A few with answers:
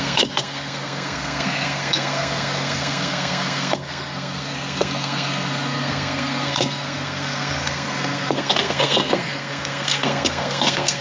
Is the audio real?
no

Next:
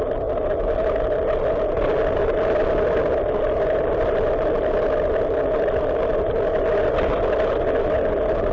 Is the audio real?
yes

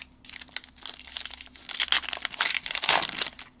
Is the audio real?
yes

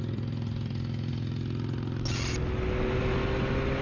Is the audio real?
yes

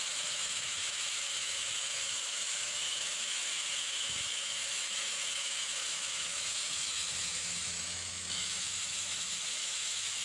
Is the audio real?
no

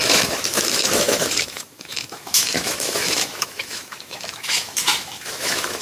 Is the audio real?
no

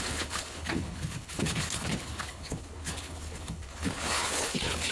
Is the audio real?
no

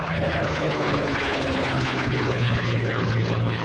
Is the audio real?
no